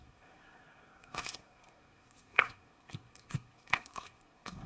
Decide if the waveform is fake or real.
fake